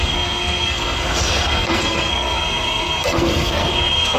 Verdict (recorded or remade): remade